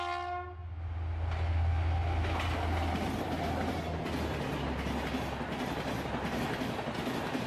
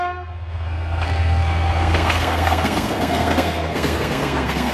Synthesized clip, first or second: second